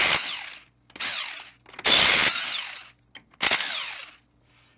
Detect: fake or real real